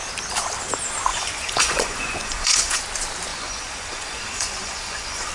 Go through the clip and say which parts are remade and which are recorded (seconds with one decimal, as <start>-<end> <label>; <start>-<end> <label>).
0.0-1.1 recorded; 1.1-2.8 remade; 2.8-3.3 recorded; 3.3-5.3 remade